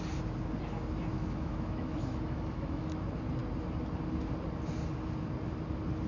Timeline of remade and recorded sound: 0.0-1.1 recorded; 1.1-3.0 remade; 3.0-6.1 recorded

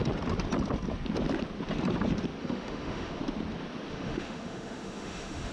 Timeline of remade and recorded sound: 0.0-2.4 recorded; 2.4-3.2 remade; 3.2-3.9 recorded; 3.9-5.5 remade

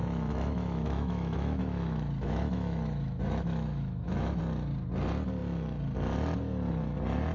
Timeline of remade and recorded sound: 0.0-4.4 remade; 4.4-7.3 recorded

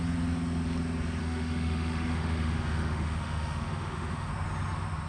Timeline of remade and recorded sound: 0.0-1.2 recorded; 1.2-4.3 remade; 4.3-5.1 recorded

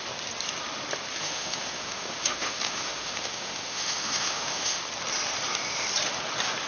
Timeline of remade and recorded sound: 0.0-1.1 recorded; 1.1-4.8 remade; 4.8-6.7 recorded

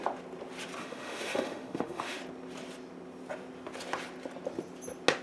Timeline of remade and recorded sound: 0.0-0.8 recorded; 0.8-2.2 remade; 2.2-5.2 recorded

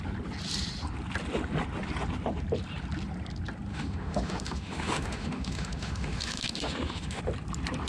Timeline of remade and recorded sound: 0.0-3.7 recorded; 3.7-7.2 remade; 7.2-7.9 recorded

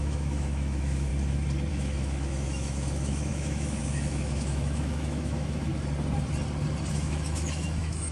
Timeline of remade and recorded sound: 0.0-1.1 remade; 1.1-1.7 recorded; 1.7-5.7 remade; 5.7-6.9 recorded; 6.9-8.1 remade